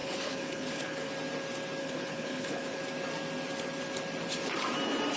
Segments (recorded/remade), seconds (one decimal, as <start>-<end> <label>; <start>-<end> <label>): 0.0-1.1 remade; 1.1-1.8 recorded; 1.8-2.8 remade; 2.8-5.2 recorded

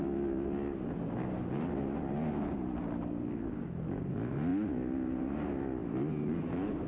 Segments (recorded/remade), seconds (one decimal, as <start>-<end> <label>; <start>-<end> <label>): 0.0-6.9 recorded